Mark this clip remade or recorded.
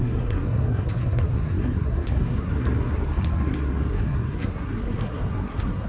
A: remade